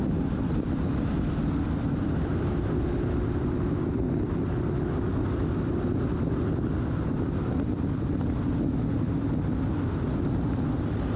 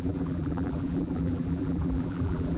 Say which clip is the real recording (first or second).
first